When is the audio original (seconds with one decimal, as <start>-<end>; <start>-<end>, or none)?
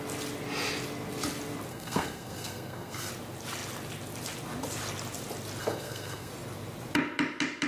0.0-1.7; 3.1-5.6; 6.3-7.7